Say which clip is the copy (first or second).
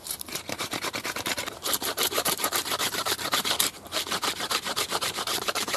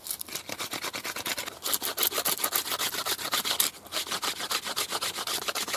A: first